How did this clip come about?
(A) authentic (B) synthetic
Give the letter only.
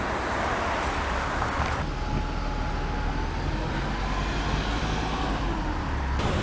A